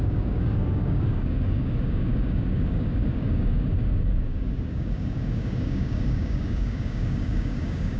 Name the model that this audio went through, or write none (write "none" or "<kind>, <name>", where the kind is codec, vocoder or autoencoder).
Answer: codec, DAC